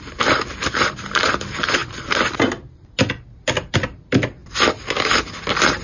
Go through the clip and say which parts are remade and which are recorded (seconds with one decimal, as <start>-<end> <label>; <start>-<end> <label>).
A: 0.0-5.8 recorded